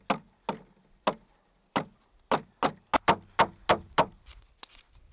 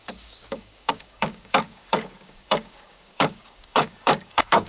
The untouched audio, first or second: first